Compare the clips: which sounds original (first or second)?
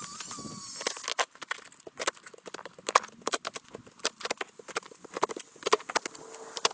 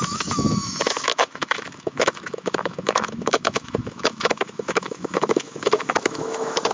first